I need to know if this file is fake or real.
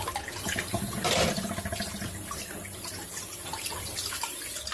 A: real